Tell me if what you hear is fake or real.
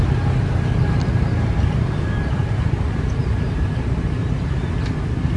real